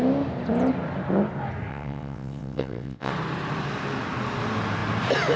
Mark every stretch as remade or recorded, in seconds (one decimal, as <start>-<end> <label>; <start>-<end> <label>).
0.0-1.7 recorded; 1.7-3.1 remade; 3.1-5.4 recorded